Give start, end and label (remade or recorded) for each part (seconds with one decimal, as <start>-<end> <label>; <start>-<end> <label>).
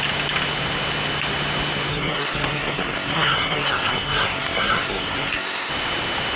0.0-1.9 recorded; 1.9-5.7 remade; 5.7-6.4 recorded